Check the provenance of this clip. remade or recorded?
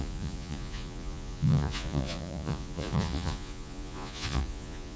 remade